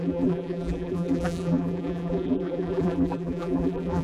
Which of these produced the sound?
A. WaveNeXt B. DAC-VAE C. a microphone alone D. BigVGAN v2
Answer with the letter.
D